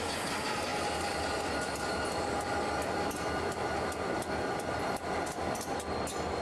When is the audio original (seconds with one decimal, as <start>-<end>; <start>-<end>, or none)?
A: 0.0-6.4